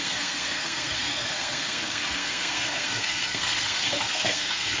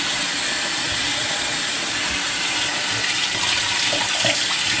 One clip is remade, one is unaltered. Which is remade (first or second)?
first